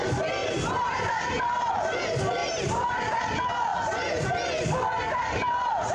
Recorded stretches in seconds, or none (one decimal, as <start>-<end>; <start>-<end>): 0.0-0.4; 1.7-2.4; 3.2-5.9